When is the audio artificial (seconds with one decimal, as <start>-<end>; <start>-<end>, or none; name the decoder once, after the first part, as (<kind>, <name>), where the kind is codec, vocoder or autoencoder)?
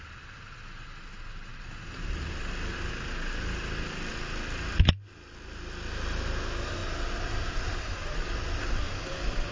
none